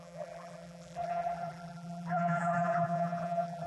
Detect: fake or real fake